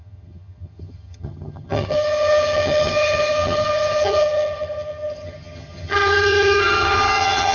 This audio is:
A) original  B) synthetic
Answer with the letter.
B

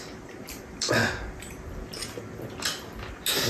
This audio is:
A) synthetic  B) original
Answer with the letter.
B